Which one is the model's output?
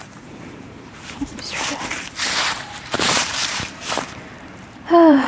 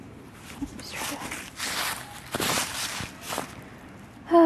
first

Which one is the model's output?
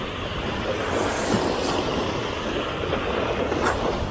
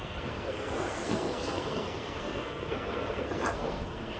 second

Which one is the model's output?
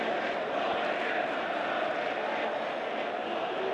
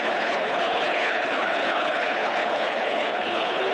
second